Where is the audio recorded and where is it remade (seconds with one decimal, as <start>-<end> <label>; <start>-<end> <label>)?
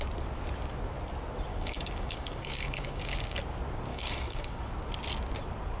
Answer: 0.0-1.5 recorded; 1.5-3.4 remade; 3.4-3.9 recorded; 3.9-4.7 remade; 4.7-5.8 recorded